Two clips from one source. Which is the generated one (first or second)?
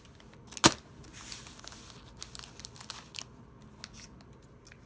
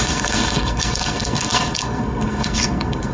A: second